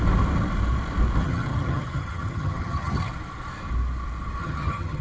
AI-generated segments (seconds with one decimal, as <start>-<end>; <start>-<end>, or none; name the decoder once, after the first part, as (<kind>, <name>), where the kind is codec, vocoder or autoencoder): 1.2-3.1 (vocoder, HiFi-GAN); 4.4-5.0